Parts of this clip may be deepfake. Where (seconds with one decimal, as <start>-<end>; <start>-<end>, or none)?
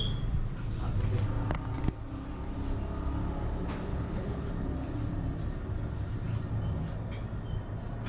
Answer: 3.9-4.5